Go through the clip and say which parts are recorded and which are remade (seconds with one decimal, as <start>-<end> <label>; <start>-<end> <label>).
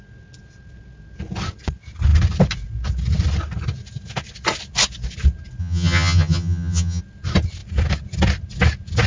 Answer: 0.0-5.6 recorded; 5.6-7.0 remade; 7.0-9.1 recorded